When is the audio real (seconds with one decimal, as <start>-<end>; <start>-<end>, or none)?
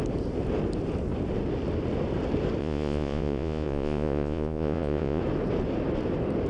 0.0-2.6; 5.2-6.5